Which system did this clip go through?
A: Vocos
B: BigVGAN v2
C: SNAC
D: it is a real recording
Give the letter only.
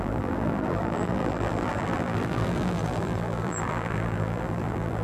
B